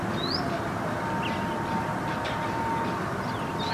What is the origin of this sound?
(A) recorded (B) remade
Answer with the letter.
A